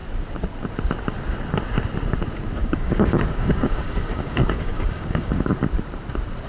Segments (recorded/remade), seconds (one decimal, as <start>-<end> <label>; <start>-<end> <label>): 0.0-2.6 recorded; 2.6-5.5 remade; 5.5-6.5 recorded